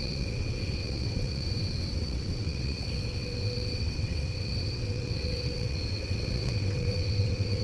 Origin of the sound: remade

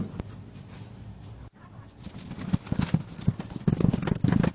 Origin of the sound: recorded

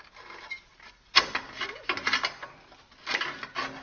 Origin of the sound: recorded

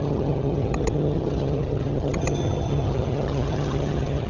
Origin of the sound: remade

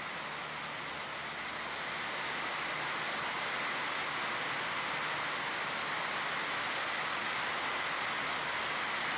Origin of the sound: recorded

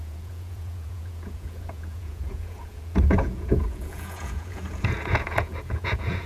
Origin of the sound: remade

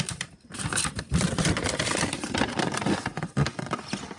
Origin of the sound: recorded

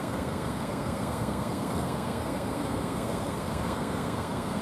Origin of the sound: remade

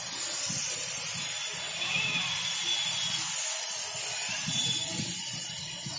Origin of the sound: recorded